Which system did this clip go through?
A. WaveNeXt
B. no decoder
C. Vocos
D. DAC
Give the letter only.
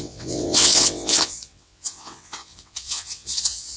A